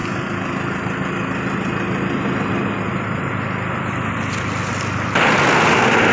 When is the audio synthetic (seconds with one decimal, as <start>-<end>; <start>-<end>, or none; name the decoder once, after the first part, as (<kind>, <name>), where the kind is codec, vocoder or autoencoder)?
none